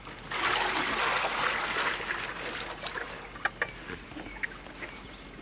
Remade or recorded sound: recorded